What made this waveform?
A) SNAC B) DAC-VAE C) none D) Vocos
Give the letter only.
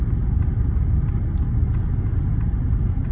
C